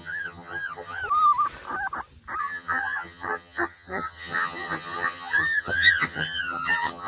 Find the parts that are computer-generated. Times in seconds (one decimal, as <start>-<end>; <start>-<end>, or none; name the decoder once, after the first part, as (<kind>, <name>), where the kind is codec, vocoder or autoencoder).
0.0-1.0 (vocoder, HiFi-GAN); 2.4-7.1